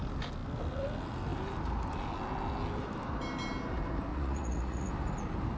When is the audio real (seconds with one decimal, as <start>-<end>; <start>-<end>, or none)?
0.0-4.1; 4.9-5.6